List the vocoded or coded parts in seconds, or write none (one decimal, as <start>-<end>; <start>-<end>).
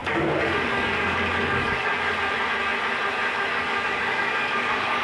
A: 0.0-1.9; 3.3-5.0